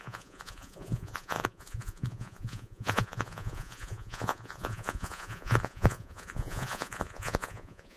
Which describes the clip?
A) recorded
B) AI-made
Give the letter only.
B